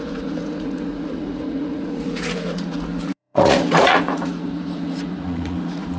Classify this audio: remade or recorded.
remade